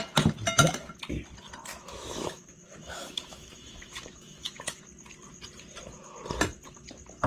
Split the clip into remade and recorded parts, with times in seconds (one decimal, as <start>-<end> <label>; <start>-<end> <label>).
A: 0.0-1.7 recorded; 1.7-4.8 remade; 4.8-7.3 recorded